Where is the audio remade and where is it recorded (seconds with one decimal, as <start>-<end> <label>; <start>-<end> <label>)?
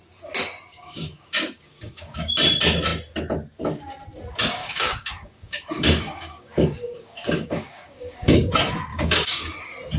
0.0-0.7 recorded; 0.7-2.3 remade; 2.3-4.6 recorded; 4.6-8.5 remade; 8.5-8.9 recorded; 8.9-9.6 remade; 9.6-10.0 recorded